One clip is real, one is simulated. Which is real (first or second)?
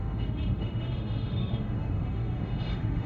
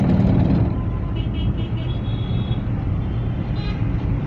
second